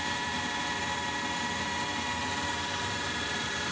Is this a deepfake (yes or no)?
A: yes